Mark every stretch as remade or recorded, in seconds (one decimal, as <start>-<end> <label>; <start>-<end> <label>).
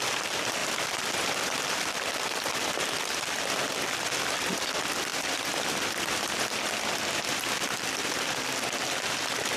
0.0-0.6 recorded; 0.6-3.2 remade; 3.2-5.1 recorded; 5.1-6.5 remade; 6.5-8.0 recorded; 8.0-9.0 remade; 9.0-9.6 recorded